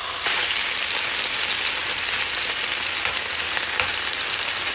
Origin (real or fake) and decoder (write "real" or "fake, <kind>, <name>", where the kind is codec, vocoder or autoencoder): real